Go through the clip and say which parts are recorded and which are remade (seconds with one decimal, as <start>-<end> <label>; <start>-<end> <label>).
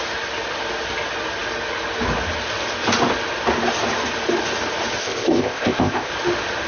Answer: 0.0-5.0 recorded; 5.0-6.1 remade; 6.1-6.7 recorded